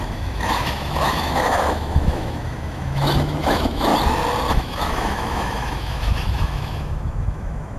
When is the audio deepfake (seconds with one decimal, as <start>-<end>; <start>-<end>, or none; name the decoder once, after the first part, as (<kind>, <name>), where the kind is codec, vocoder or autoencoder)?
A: 0.0-3.9 (autoencoder, DAC-VAE); 4.5-7.8